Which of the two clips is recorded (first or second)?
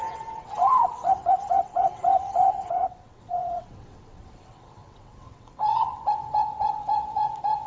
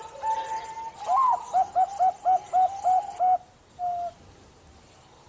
second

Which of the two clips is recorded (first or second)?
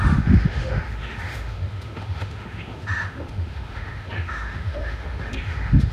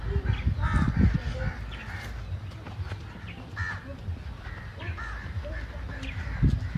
second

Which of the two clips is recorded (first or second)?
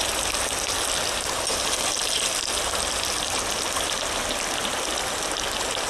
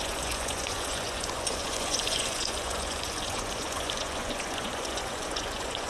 first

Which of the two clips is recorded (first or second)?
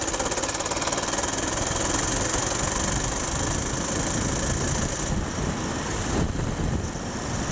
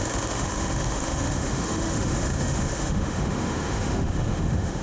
first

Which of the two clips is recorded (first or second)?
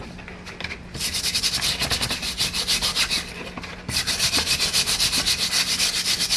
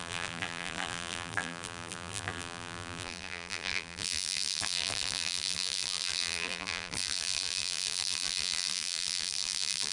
first